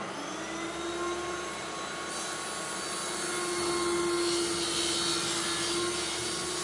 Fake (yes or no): no